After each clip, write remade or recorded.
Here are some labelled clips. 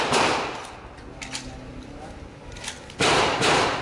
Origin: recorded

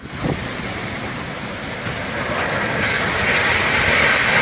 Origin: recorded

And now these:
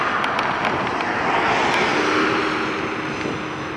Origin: recorded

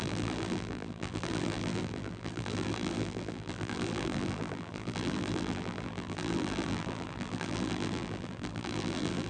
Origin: remade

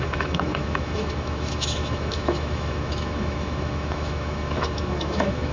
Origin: remade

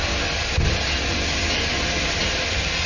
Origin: recorded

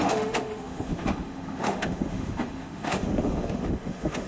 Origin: remade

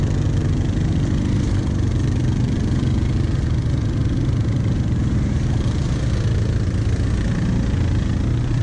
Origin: recorded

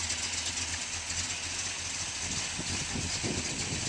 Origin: recorded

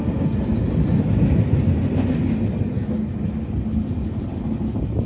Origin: recorded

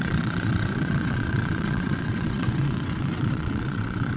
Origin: remade